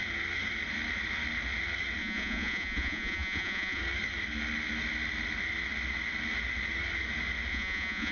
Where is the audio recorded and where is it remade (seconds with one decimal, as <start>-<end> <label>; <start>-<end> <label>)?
0.0-2.0 recorded; 2.0-3.8 remade; 3.8-7.5 recorded; 7.5-8.1 remade